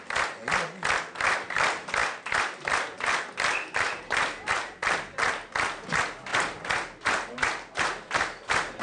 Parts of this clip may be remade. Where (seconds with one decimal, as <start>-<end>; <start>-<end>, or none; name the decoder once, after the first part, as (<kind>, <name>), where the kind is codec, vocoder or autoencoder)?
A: 2.0-4.5 (vocoder, BigVGAN v2)